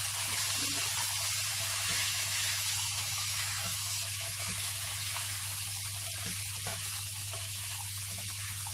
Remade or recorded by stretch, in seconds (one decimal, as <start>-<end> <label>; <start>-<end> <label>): 0.0-1.5 recorded; 1.5-5.4 remade; 5.4-6.7 recorded; 6.7-8.7 remade